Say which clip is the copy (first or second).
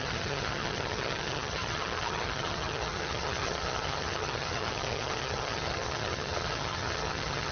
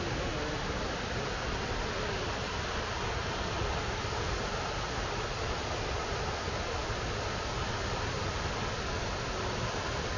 first